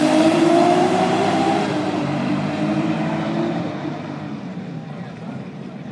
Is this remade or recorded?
remade